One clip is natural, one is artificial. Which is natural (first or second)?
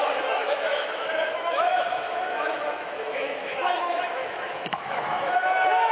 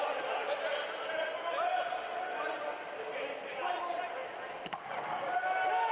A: second